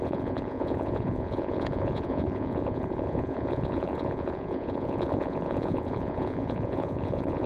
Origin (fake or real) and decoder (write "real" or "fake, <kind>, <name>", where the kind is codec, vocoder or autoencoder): fake, vocoder, Vocos